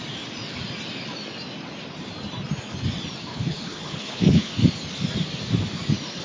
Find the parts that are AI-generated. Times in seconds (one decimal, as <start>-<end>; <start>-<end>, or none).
3.3-4.5

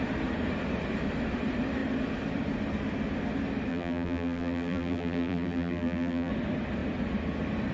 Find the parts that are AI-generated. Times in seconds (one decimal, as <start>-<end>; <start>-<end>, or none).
3.7-6.3

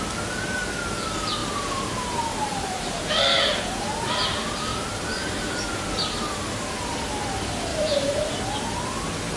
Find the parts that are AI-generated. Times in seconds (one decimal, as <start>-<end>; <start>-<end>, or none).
1.4-3.1; 4.7-6.7; 7.7-8.4

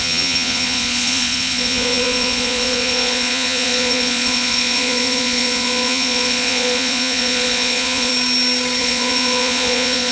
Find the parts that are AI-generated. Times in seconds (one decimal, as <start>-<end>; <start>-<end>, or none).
0.0-8.1; 8.8-10.1